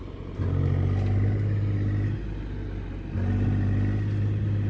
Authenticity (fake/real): real